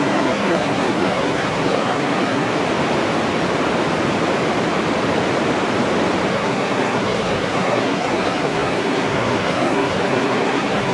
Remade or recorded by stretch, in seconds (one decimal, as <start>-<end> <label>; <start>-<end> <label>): 0.0-2.5 remade; 2.5-6.3 recorded; 6.3-10.9 remade